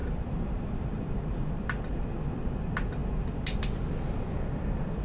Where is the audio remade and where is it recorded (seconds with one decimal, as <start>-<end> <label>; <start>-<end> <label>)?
0.0-1.4 remade; 1.4-5.0 recorded